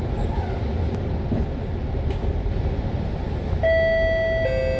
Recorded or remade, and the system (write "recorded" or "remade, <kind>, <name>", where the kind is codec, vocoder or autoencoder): recorded